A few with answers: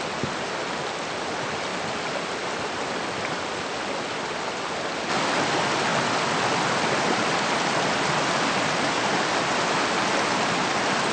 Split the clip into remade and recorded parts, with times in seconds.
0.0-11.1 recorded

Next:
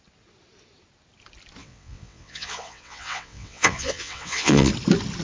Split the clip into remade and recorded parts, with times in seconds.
0.0-1.6 recorded; 1.6-4.7 remade; 4.7-5.2 recorded

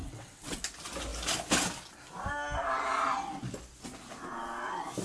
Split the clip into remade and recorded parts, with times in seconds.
0.0-0.6 remade; 0.6-5.0 recorded

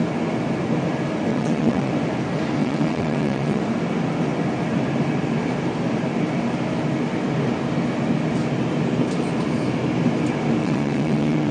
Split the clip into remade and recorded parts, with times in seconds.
0.0-1.3 recorded; 1.3-1.9 remade; 1.9-2.6 recorded; 2.6-3.6 remade; 3.6-10.6 recorded; 10.6-11.5 remade

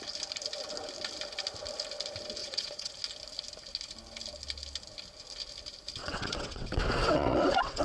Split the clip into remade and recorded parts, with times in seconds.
0.0-2.4 recorded; 2.4-2.9 remade; 2.9-6.0 recorded; 6.0-7.8 remade